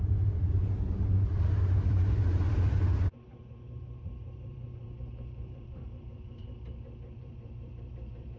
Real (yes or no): no